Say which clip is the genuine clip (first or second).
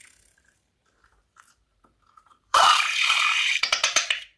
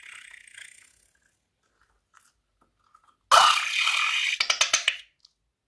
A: second